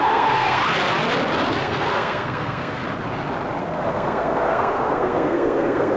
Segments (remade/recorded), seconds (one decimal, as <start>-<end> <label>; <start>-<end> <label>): 0.0-0.6 remade; 0.6-1.6 recorded; 1.6-2.8 remade; 2.8-3.6 recorded; 3.6-6.0 remade